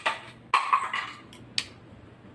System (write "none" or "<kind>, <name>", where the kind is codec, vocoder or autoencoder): none